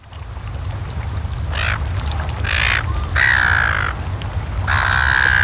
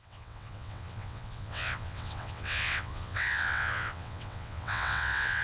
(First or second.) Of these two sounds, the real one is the first